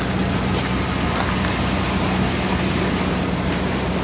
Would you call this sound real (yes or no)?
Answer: yes